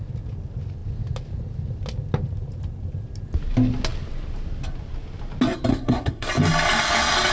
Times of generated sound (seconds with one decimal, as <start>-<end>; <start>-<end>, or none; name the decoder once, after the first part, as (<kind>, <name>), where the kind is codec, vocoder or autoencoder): 5.7-6.3 (codec, SNAC)